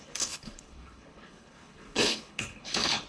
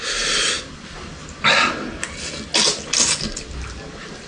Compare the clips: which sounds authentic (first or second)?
second